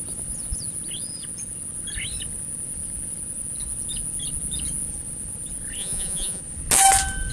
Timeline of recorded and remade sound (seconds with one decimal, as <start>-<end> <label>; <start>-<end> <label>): 0.0-5.8 recorded; 5.8-6.4 remade; 6.4-7.3 recorded